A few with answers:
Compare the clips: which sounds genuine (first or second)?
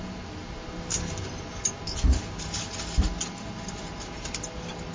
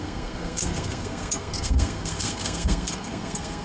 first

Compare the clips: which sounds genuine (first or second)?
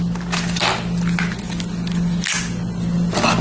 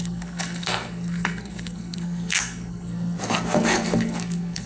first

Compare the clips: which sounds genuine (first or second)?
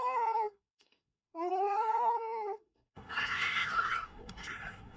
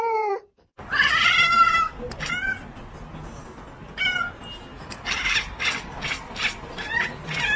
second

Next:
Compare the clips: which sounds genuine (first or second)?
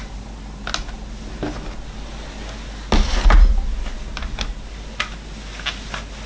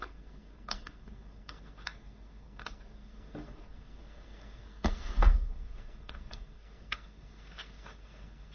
first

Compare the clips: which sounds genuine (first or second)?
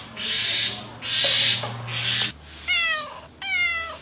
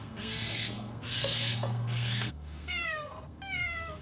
first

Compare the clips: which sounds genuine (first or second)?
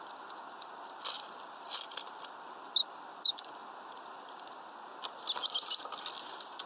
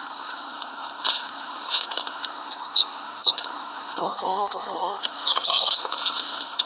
first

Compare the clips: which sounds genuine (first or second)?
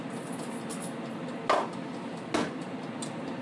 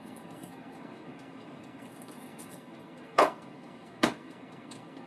first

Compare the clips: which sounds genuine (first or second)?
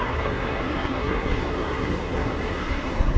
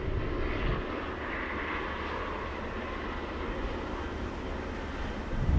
second